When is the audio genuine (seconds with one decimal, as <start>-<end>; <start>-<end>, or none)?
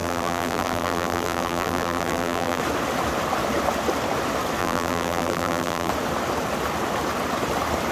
2.6-4.6; 5.9-7.9